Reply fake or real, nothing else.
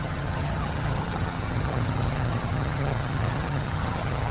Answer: fake